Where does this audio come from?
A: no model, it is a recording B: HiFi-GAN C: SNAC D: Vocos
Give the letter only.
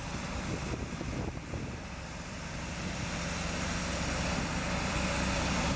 A